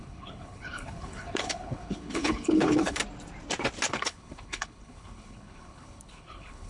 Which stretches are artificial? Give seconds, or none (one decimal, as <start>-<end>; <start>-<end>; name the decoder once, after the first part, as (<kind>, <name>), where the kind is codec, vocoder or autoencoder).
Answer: 0.0-3.0 (codec, HILCodec); 3.9-6.7